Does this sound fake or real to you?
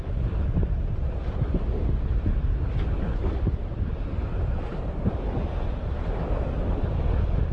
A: real